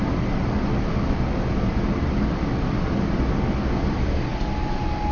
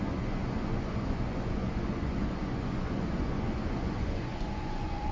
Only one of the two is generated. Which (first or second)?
second